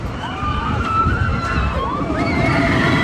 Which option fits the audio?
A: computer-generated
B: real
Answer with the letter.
A